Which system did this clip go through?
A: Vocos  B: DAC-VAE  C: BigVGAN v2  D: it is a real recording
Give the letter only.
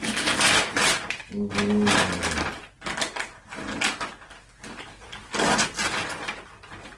D